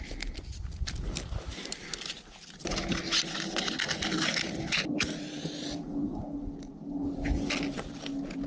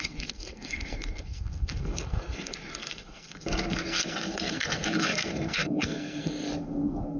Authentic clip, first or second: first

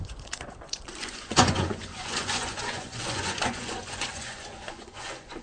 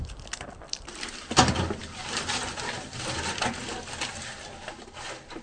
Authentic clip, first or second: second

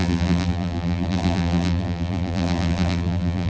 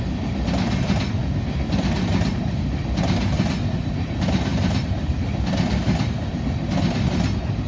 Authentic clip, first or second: second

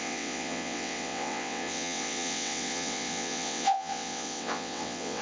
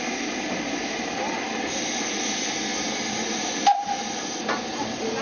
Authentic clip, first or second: second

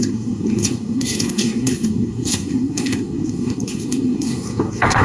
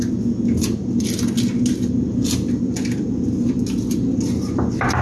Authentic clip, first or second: second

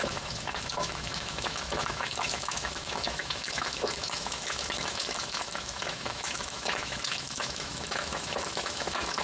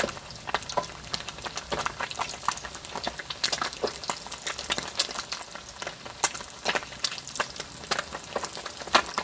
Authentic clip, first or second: second